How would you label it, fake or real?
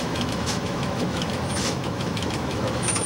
fake